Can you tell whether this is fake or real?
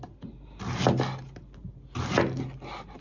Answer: real